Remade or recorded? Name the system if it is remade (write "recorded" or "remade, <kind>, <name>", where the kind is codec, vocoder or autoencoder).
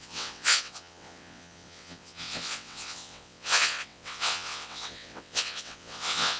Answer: remade, vocoder, WaveNeXt